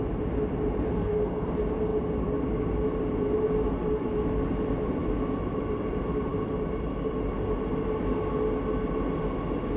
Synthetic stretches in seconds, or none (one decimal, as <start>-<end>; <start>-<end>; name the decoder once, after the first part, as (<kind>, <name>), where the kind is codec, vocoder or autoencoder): 1.0-1.5 (codec, SNAC)